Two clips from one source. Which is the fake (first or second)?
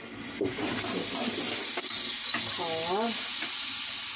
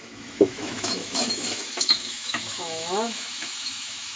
second